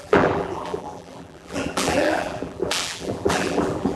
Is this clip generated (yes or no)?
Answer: yes